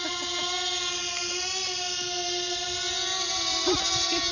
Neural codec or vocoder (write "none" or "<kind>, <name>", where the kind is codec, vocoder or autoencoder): none